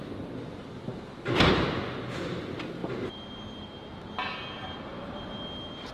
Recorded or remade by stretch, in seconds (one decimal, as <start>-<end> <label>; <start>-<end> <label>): 0.0-5.9 recorded